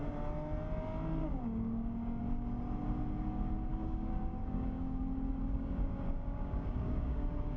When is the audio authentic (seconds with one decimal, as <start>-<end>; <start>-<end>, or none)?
0.0-1.2; 2.2-3.7; 5.0-5.4

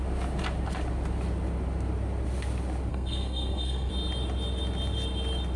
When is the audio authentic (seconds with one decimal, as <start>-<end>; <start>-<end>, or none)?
0.0-2.9; 3.9-5.6